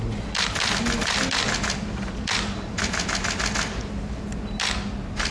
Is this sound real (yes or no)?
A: yes